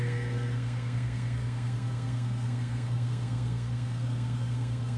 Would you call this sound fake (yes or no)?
yes